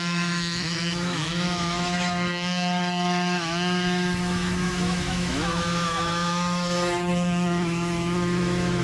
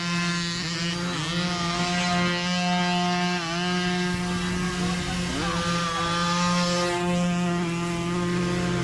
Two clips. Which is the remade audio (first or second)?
first